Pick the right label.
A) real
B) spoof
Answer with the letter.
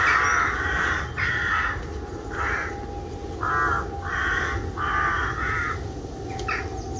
A